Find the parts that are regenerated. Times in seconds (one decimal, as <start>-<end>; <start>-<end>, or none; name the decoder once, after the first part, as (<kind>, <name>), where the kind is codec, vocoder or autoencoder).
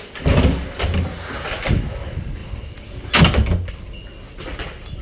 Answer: none